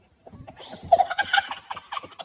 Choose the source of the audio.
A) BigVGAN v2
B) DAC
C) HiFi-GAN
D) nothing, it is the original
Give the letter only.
D